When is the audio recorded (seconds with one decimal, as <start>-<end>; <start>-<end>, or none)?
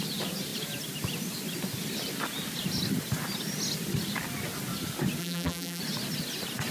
0.0-5.2; 5.8-6.7